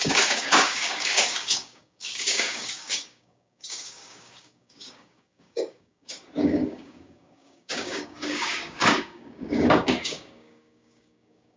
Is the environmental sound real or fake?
fake